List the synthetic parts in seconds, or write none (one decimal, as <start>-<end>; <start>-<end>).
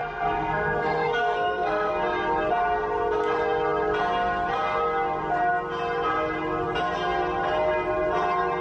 0.0-1.9